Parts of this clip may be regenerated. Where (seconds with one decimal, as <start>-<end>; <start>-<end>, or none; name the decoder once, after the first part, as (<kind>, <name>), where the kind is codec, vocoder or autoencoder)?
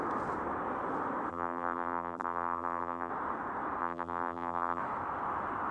1.3-3.1 (vocoder, BigVGAN v2); 3.8-4.8